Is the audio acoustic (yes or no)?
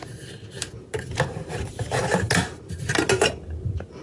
yes